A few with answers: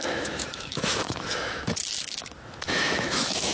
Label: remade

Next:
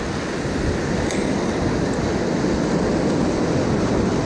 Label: recorded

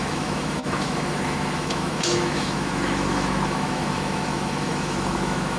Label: remade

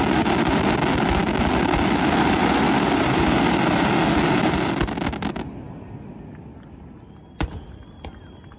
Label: recorded